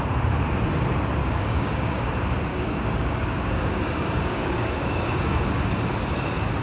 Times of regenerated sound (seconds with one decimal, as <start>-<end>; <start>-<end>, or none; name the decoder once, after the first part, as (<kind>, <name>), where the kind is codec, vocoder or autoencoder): 1.2-2.1 (codec, DAC); 2.5-5.6